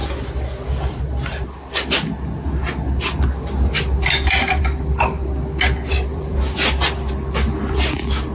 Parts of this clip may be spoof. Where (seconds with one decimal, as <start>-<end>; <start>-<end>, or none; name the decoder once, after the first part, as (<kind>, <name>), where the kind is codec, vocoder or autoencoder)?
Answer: 6.1-7.1 (vocoder, BigVGAN v2)